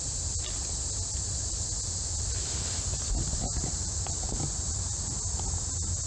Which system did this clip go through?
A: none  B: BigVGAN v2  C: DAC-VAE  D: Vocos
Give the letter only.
A